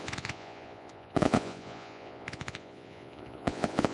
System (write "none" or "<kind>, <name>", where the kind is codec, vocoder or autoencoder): vocoder, Vocos